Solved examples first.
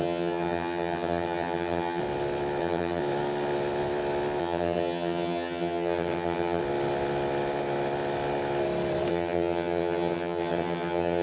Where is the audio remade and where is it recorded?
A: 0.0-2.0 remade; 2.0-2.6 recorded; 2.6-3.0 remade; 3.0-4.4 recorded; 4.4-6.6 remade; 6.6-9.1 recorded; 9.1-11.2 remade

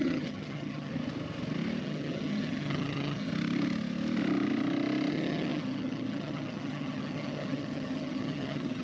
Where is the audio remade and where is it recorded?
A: 0.0-0.9 remade; 0.9-1.8 recorded; 1.8-3.3 remade; 3.3-5.1 recorded; 5.1-8.8 remade

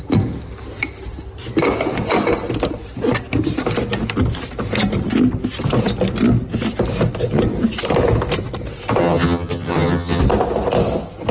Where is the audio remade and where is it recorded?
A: 0.0-9.0 recorded; 9.0-10.2 remade; 10.2-11.3 recorded

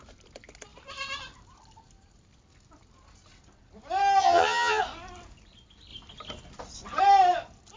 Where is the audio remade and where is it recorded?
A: 0.0-4.2 recorded; 4.2-4.8 remade; 4.8-7.8 recorded

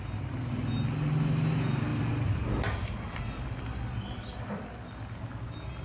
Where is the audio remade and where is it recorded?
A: 0.0-5.8 recorded

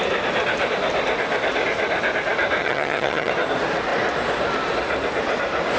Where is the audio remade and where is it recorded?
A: 0.0-2.6 recorded; 2.6-3.3 remade; 3.3-5.8 recorded